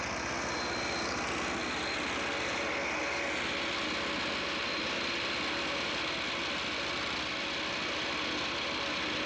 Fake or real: real